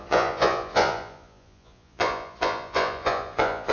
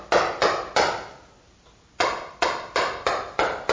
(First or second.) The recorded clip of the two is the second